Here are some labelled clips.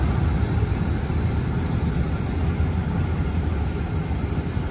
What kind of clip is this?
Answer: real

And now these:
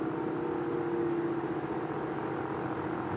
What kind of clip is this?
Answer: real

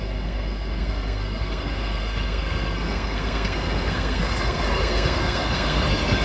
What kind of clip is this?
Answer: fake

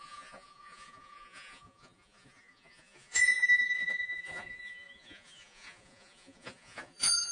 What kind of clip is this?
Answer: fake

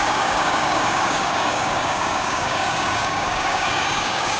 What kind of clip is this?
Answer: fake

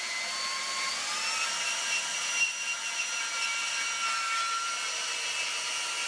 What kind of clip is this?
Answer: real